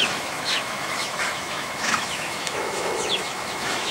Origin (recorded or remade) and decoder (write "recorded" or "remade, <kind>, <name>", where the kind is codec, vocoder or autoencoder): remade, autoencoder, DAC-VAE